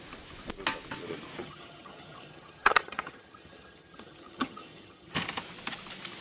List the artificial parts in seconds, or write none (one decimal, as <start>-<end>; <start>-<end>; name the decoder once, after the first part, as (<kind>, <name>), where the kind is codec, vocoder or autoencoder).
1.4-5.1 (vocoder, HiFi-GAN)